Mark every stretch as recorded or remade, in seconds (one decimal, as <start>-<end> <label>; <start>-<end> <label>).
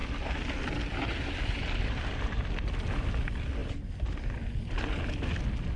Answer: 0.0-5.8 recorded